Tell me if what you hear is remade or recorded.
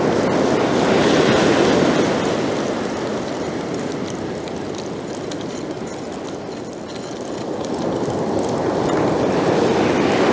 recorded